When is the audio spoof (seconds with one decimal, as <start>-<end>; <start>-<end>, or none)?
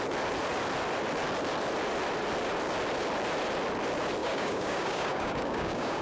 4.2-6.0